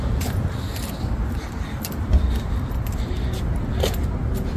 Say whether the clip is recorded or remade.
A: recorded